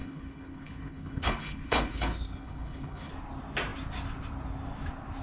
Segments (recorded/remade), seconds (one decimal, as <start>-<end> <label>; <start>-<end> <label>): 0.0-3.1 remade; 3.1-5.2 recorded